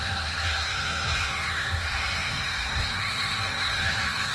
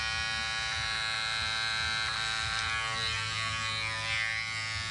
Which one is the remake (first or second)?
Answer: first